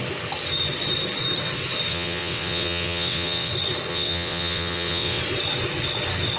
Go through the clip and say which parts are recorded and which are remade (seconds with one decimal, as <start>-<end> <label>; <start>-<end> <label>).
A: 0.0-1.9 recorded; 1.9-3.5 remade; 3.5-3.9 recorded; 3.9-5.2 remade; 5.2-6.4 recorded